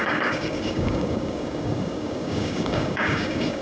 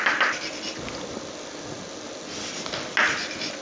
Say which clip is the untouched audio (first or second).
second